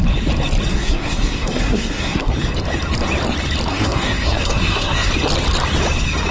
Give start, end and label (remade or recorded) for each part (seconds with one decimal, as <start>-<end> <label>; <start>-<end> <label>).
0.0-0.7 recorded; 0.7-2.3 remade; 2.3-3.7 recorded; 3.7-5.1 remade; 5.1-6.3 recorded

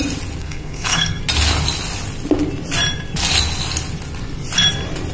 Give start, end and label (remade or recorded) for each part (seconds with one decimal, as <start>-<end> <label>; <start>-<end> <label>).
0.0-0.4 recorded; 0.4-1.2 remade; 1.2-5.1 recorded

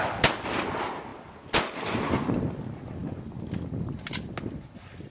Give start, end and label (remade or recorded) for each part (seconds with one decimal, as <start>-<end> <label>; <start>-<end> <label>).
0.0-5.1 recorded

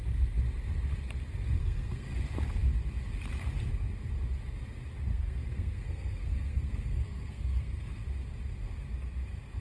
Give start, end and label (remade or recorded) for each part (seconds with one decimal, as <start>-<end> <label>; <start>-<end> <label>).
0.0-1.6 recorded; 1.6-2.1 remade; 2.1-5.1 recorded; 5.1-8.0 remade; 8.0-9.6 recorded

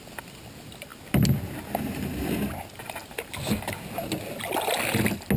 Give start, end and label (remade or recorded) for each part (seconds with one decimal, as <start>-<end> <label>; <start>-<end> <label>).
0.0-5.4 recorded

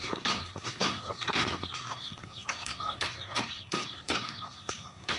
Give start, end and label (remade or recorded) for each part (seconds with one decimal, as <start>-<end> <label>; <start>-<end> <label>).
0.0-5.2 remade